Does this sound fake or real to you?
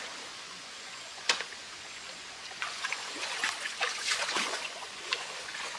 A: fake